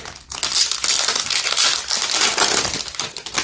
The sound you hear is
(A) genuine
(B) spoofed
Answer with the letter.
A